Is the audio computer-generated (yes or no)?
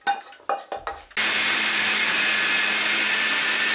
no